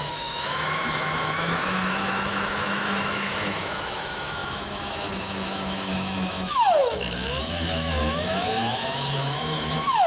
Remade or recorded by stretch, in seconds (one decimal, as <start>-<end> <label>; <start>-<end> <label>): 0.0-10.1 remade